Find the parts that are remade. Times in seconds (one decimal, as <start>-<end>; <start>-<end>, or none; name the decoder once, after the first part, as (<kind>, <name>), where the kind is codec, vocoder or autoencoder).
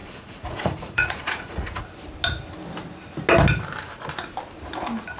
0.0-1.8 (vocoder, Vocos)